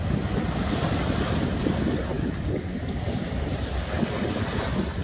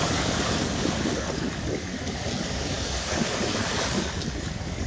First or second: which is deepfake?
second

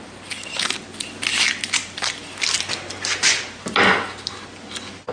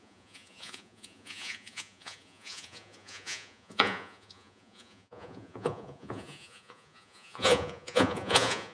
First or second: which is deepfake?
second